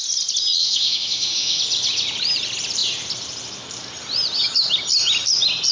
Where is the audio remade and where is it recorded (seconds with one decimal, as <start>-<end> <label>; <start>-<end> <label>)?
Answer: 0.0-0.6 recorded; 0.6-1.6 remade; 1.6-5.7 recorded